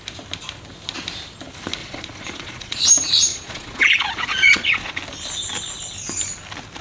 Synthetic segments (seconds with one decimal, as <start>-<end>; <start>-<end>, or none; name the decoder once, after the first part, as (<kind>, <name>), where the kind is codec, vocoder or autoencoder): 1.8-2.8 (vocoder, Vocos); 3.3-4.9